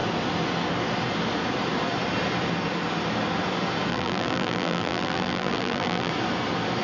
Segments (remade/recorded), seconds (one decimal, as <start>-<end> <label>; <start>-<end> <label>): 0.0-3.9 recorded; 3.9-6.1 remade; 6.1-6.8 recorded